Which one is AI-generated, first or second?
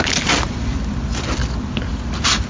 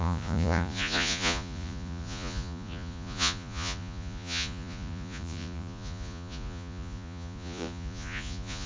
second